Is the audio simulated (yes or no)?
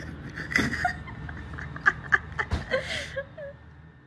no